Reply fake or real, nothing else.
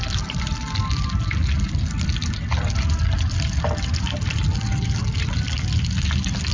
real